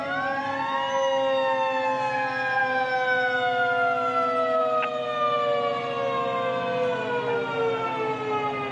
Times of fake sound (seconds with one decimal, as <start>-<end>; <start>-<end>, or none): none